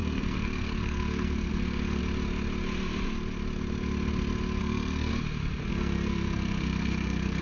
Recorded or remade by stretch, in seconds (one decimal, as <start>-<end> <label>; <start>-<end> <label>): 0.0-2.0 remade; 2.0-4.6 recorded; 4.6-5.1 remade; 5.1-5.7 recorded; 5.7-7.4 remade